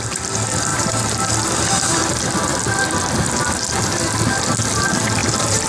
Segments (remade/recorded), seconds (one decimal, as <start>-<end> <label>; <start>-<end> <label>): 0.0-0.7 recorded; 0.7-1.5 remade; 1.5-5.2 recorded; 5.2-5.7 remade